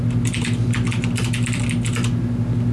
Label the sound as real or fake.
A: real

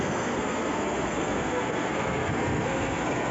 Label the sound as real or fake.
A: fake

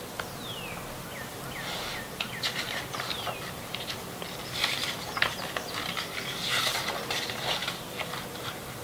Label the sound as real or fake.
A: real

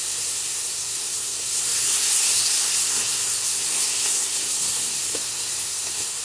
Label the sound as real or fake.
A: fake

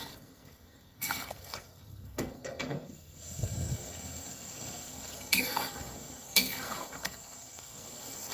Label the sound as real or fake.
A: fake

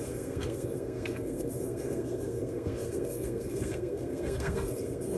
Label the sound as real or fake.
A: fake